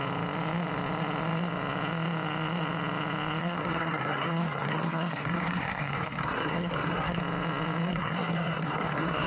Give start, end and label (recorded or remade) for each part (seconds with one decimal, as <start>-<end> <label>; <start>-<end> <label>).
0.0-3.4 recorded; 3.4-7.2 remade; 7.2-7.9 recorded; 7.9-9.3 remade